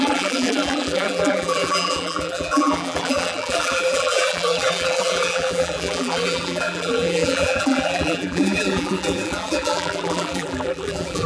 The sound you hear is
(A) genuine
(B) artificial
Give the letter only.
B